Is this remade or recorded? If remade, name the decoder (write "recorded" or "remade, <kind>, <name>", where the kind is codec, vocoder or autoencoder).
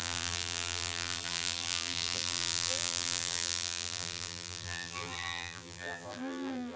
remade, vocoder, BigVGAN v2